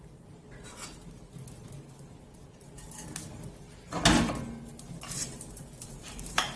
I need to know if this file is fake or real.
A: real